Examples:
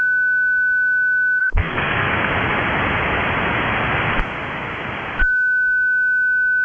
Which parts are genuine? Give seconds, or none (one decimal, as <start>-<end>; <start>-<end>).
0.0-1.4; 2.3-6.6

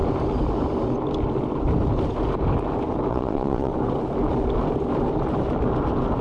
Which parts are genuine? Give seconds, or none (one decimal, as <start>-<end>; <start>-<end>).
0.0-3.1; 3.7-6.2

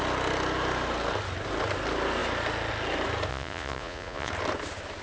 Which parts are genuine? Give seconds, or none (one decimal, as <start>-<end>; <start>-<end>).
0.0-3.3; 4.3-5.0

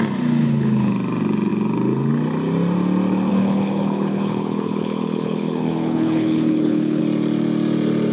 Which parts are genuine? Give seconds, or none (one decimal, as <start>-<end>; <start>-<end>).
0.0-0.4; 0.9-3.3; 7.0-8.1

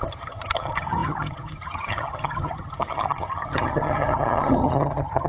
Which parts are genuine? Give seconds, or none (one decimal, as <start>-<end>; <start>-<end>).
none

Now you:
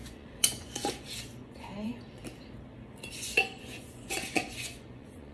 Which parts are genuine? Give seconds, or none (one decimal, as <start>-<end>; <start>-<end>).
2.2-3.1